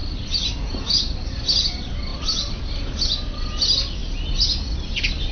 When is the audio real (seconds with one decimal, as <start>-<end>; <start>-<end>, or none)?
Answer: 0.0-5.3